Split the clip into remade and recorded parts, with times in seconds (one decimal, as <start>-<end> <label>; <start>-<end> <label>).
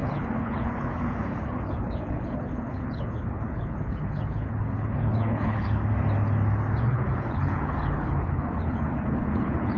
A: 0.0-5.8 remade; 5.8-6.8 recorded; 6.8-9.8 remade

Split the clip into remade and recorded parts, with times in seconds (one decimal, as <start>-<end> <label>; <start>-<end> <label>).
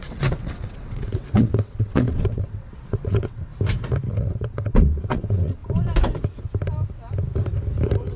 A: 0.0-3.5 remade; 3.5-4.1 recorded; 4.1-5.6 remade; 5.6-8.2 recorded